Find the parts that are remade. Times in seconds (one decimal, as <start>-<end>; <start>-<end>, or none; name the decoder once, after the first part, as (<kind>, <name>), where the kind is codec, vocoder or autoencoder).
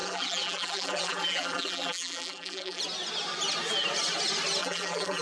0.0-2.8 (vocoder, BigVGAN v2); 4.6-5.2